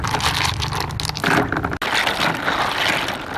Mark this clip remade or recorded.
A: recorded